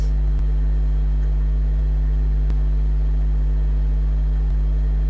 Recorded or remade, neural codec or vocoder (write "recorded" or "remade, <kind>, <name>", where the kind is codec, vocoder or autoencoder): recorded